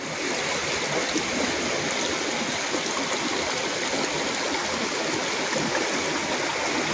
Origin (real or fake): real